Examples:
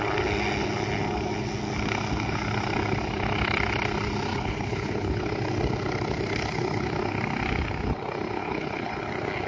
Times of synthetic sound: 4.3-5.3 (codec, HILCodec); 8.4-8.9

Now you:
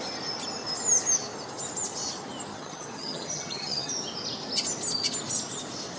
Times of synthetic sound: 2.5-3.9 (vocoder, HiFi-GAN)

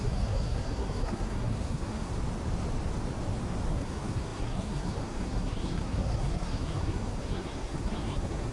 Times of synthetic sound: 0.0-2.1 (codec, SNAC); 3.7-8.5

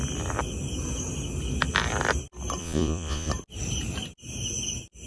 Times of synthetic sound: 2.6-3.3 (vocoder, Vocos)

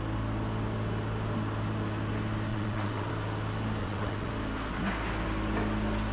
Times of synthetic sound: 2.5-3.1 (vocoder, WaveNeXt); 3.8-4.3

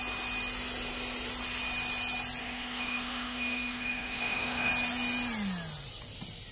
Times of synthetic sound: 2.4-4.7 (autoencoder, DAC-VAE)

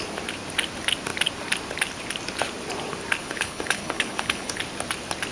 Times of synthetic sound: 3.2-4.6 (codec, HILCodec)

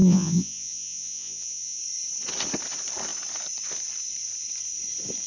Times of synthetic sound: 0.0-1.8 (vocoder, Vocos)